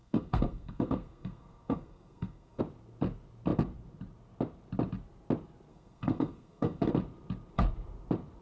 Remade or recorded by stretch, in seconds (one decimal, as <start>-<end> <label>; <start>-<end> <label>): 0.0-2.6 remade; 2.6-5.7 recorded; 5.7-6.9 remade; 6.9-8.4 recorded